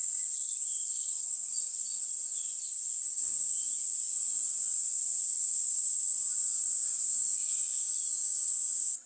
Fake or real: real